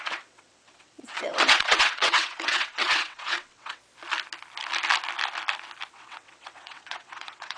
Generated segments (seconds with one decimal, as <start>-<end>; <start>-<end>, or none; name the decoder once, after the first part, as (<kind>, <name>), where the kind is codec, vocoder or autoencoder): 0.0-3.8 (vocoder, WaveNeXt); 5.9-7.6